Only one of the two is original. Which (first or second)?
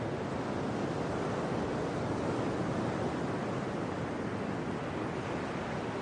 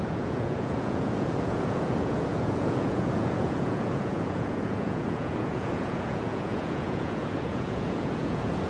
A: first